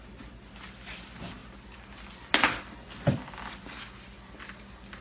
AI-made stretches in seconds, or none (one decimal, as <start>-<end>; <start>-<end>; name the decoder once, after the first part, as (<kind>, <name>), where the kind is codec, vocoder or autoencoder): none